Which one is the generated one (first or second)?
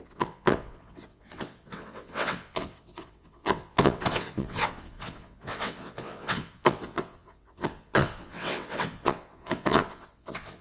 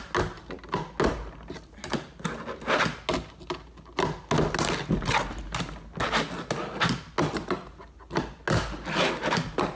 first